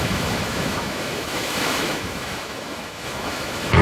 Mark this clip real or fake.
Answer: fake